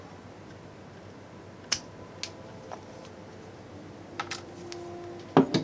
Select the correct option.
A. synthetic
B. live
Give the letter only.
B